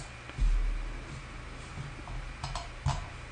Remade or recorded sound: recorded